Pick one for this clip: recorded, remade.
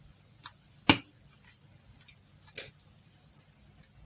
recorded